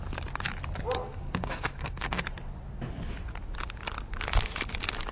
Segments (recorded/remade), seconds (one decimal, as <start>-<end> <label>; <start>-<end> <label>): 0.0-1.0 recorded; 1.0-2.2 remade; 2.2-5.1 recorded